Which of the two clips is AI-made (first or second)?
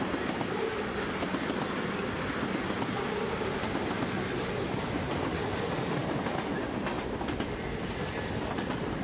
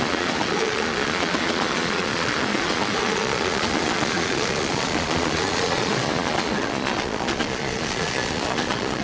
second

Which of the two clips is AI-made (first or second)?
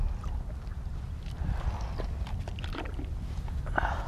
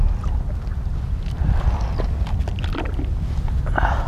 first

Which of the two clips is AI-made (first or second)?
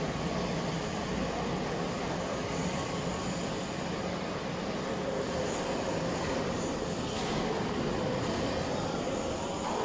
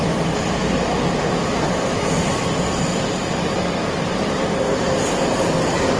first